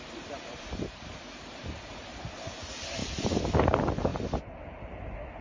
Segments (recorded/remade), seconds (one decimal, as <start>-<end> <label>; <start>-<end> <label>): 0.0-3.0 remade; 3.0-3.6 recorded; 3.6-5.4 remade